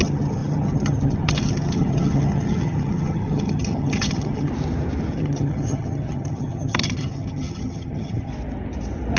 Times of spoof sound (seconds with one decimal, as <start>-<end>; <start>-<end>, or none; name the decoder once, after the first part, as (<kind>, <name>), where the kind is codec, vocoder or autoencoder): 0.0-4.5 (vocoder, HiFi-GAN); 5.1-8.3